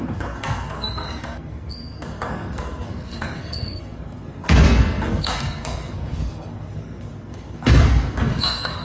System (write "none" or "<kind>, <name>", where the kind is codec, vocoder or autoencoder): codec, SNAC